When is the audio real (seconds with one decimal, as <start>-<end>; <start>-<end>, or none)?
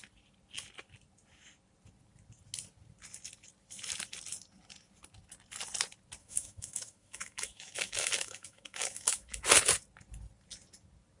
0.0-6.2; 9.3-11.2